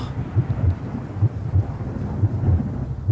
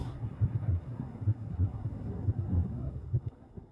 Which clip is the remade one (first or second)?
second